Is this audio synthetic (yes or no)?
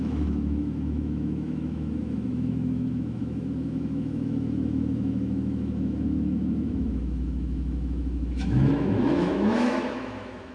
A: yes